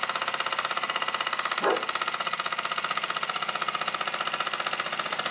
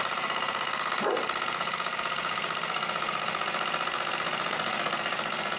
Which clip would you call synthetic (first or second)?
second